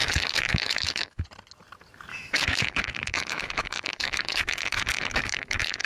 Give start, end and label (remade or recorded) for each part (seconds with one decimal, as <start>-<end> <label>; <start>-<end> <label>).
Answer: 0.0-1.2 remade; 1.2-2.1 recorded; 2.1-5.9 remade